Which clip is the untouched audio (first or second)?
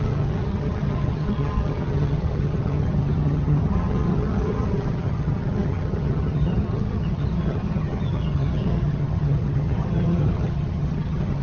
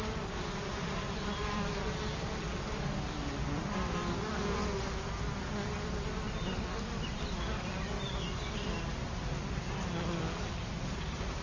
second